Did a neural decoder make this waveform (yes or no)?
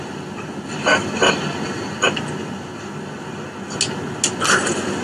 no